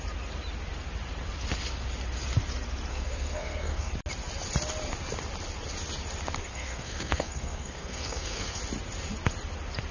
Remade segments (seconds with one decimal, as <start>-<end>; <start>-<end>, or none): 2.9-3.9; 6.4-8.6